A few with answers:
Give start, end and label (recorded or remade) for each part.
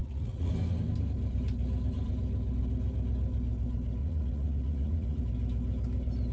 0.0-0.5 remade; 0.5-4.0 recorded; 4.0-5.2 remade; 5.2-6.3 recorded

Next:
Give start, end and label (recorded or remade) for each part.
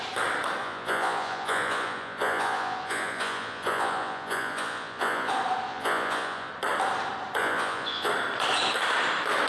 0.0-0.6 recorded; 0.6-5.3 remade; 5.3-5.7 recorded; 5.7-6.5 remade; 6.5-7.4 recorded; 7.4-8.1 remade; 8.1-9.5 recorded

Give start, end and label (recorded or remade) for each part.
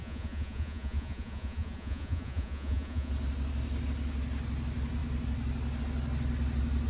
0.0-3.1 remade; 3.1-6.9 recorded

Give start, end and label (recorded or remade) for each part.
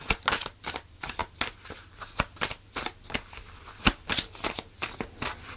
0.0-5.6 recorded